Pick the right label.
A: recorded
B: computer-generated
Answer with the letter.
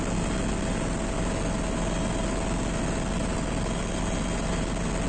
A